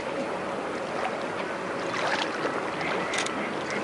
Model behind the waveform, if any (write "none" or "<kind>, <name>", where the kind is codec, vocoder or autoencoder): none